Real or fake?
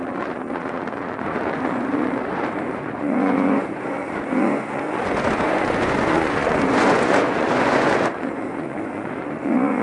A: fake